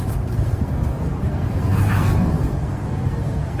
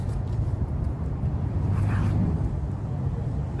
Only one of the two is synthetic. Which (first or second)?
first